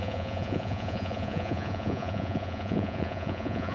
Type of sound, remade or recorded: remade